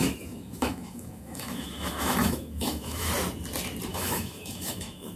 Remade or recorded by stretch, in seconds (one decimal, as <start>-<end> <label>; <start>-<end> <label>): 0.0-3.1 remade; 3.1-3.9 recorded; 3.9-5.2 remade